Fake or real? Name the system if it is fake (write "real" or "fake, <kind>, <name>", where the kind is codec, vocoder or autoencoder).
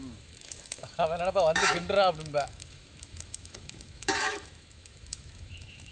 fake, autoencoder, DAC-VAE